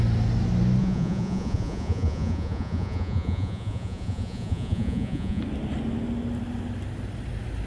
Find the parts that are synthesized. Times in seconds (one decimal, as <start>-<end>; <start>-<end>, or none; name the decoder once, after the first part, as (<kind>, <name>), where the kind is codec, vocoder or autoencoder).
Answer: 0.8-5.4 (vocoder, Vocos)